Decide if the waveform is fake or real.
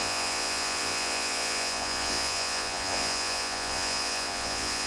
fake